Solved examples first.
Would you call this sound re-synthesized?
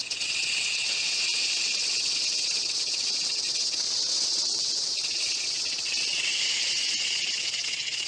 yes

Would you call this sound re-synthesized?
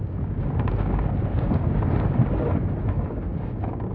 yes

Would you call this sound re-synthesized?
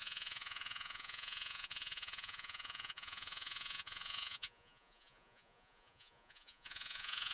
yes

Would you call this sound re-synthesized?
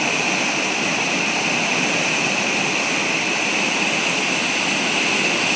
no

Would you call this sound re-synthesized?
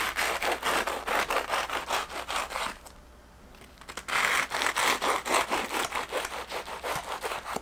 no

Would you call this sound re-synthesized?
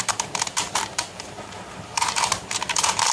yes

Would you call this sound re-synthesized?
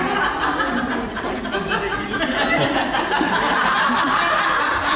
no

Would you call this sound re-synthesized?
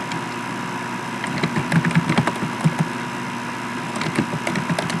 no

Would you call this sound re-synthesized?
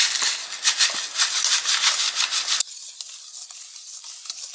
no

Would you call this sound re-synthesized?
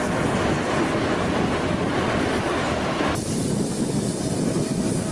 no